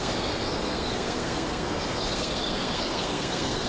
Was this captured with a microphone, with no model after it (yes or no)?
no